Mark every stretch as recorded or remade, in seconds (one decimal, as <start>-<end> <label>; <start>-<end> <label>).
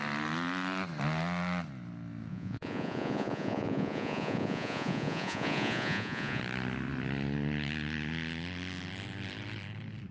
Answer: 0.0-2.3 recorded; 2.3-6.4 remade; 6.4-10.1 recorded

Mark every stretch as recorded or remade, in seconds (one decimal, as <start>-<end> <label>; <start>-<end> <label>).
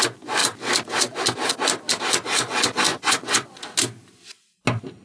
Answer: 0.0-2.9 recorded; 2.9-3.6 remade; 3.6-5.0 recorded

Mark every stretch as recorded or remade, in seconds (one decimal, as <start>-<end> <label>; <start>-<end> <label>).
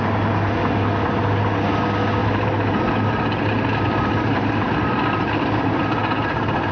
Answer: 0.0-2.2 recorded; 2.2-5.1 remade; 5.1-6.7 recorded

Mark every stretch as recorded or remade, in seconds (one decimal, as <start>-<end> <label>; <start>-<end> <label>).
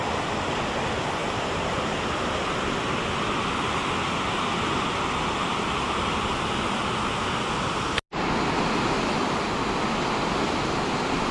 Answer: 0.0-1.2 recorded; 1.2-3.2 remade; 3.2-3.8 recorded; 3.8-5.7 remade; 5.7-11.3 recorded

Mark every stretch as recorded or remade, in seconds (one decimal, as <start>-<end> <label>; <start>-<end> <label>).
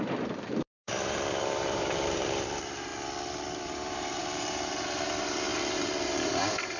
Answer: 0.0-2.9 remade; 2.9-3.6 recorded; 3.6-6.8 remade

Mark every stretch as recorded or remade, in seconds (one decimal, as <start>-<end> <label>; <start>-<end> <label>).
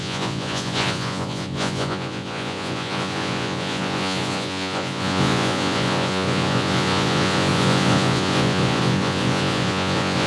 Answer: 0.0-10.3 remade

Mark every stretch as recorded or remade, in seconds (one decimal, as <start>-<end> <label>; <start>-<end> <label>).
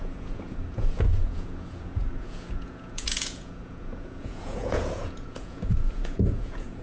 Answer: 0.0-6.8 remade